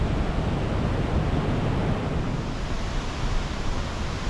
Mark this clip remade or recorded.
recorded